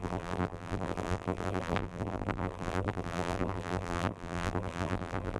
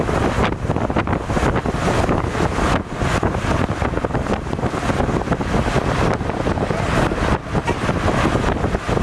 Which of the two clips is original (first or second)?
second